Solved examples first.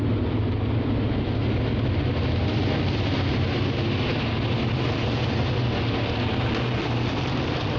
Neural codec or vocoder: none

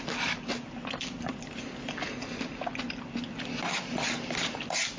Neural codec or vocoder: none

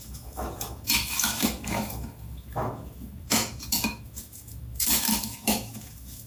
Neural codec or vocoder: autoencoder, DAC-VAE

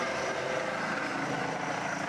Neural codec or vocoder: none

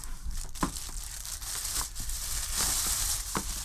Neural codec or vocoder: vocoder, BigVGAN v2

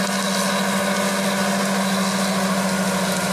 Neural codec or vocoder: none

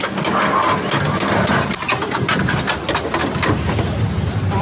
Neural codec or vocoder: none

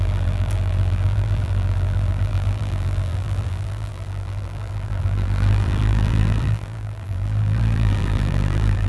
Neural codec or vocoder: vocoder, BigVGAN v2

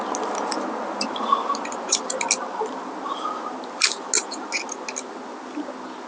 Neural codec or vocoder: none